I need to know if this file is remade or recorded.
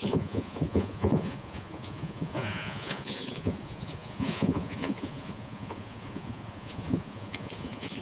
remade